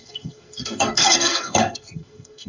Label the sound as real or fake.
fake